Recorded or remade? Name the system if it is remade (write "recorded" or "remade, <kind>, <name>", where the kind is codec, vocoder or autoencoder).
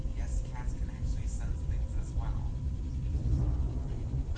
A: recorded